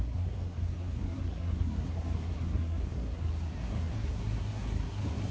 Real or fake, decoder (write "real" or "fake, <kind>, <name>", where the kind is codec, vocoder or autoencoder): fake, codec, SNAC